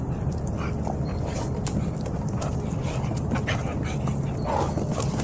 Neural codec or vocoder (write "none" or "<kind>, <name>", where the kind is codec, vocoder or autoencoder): none